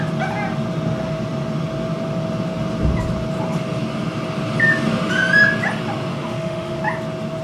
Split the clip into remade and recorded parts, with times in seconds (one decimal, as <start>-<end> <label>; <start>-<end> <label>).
0.0-6.1 recorded; 6.1-6.8 remade; 6.8-7.4 recorded